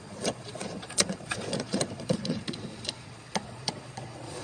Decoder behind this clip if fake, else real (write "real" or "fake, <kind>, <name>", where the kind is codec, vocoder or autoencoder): fake, vocoder, Vocos